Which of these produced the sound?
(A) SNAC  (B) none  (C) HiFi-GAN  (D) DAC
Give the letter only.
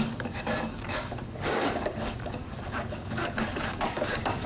D